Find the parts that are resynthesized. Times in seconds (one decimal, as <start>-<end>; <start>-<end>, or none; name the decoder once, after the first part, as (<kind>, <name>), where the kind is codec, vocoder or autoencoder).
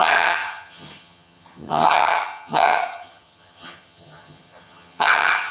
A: 0.0-5.5 (vocoder, HiFi-GAN)